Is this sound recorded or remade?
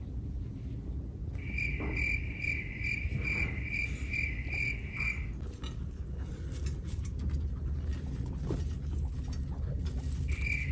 recorded